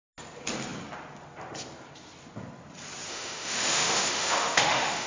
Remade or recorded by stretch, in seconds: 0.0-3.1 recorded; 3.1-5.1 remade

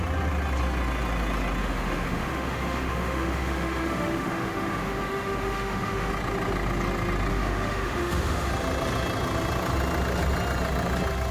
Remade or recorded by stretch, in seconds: 0.0-1.6 recorded; 1.6-6.1 remade; 6.1-7.3 recorded; 7.3-8.5 remade; 8.5-11.3 recorded

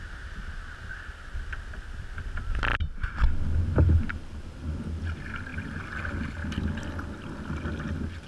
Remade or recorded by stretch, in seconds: 0.0-8.3 recorded

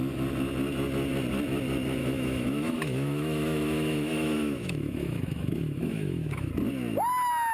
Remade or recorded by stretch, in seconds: 0.0-2.0 recorded; 2.0-6.5 remade; 6.5-7.5 recorded

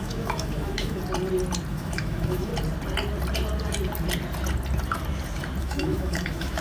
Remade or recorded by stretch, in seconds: 0.0-1.0 remade; 1.0-1.7 recorded; 1.7-2.5 remade; 2.5-5.6 recorded; 5.6-6.6 remade